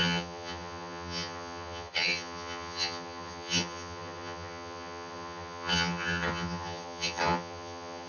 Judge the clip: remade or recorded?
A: remade